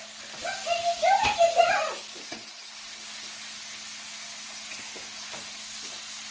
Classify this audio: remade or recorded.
recorded